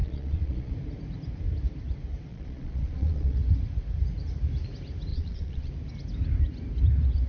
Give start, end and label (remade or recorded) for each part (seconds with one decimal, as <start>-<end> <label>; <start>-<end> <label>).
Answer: 0.0-0.7 remade; 0.7-2.3 recorded; 2.3-3.4 remade; 3.4-5.1 recorded; 5.1-5.7 remade; 5.7-7.3 recorded